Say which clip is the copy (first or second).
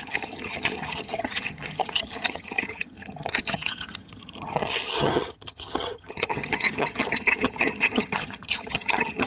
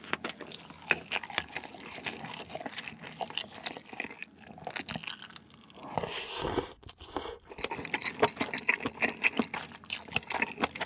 first